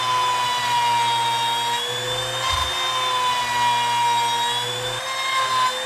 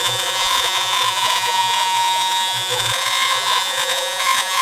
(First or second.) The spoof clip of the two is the second